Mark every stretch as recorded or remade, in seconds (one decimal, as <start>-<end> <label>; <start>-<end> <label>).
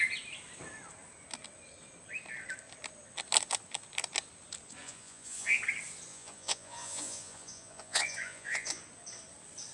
0.0-4.8 recorded; 4.8-5.6 remade; 5.6-6.1 recorded; 6.1-8.8 remade; 8.8-9.7 recorded